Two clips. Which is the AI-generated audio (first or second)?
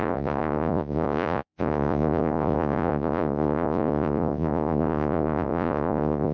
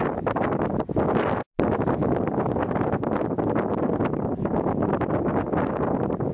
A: first